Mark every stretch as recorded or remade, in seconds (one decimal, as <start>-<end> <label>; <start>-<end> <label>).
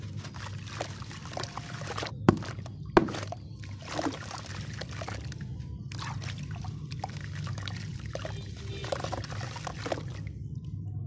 0.0-3.0 recorded; 3.0-4.5 remade; 4.5-8.8 recorded; 8.8-9.3 remade; 9.3-11.1 recorded